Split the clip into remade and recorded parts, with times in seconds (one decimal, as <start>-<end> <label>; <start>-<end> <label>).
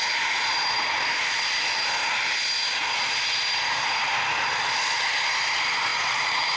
0.0-5.9 recorded; 5.9-6.6 remade